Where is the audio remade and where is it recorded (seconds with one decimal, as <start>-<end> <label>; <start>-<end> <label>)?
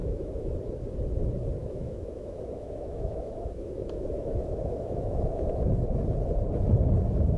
0.0-0.5 remade; 0.5-1.6 recorded; 1.6-5.7 remade; 5.7-7.4 recorded